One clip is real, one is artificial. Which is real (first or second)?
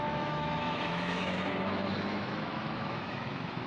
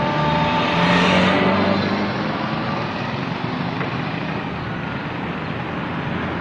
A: second